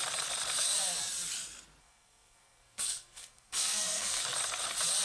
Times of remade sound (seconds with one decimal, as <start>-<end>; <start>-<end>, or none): 1.8-4.2